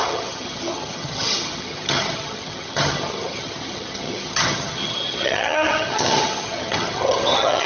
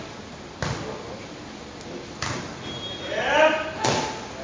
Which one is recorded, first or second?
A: second